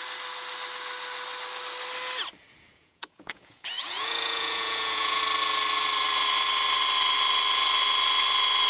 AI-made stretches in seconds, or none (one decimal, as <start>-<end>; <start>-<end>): 2.7-5.2